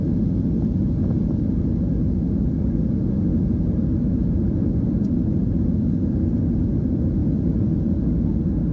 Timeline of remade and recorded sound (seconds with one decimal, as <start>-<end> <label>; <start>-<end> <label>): 0.0-8.7 recorded